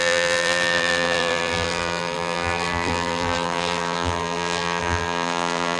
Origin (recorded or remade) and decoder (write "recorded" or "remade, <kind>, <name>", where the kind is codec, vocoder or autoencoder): remade, vocoder, BigVGAN v2